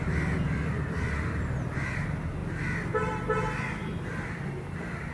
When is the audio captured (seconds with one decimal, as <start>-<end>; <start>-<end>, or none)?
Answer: 0.0-5.1